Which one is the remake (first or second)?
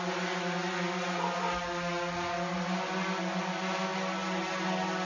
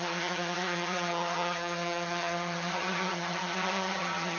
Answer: second